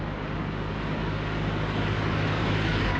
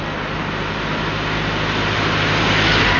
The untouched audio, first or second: second